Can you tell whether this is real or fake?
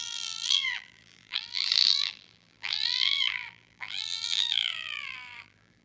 fake